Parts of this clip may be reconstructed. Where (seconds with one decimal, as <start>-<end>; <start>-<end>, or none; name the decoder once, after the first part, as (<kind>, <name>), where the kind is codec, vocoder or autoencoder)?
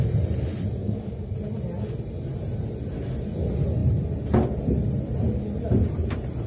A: 0.8-1.3 (codec, DAC)